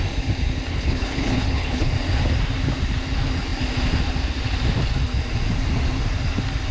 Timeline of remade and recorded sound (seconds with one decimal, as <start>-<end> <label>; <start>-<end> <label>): 0.0-0.7 recorded; 0.7-1.9 remade; 1.9-6.7 recorded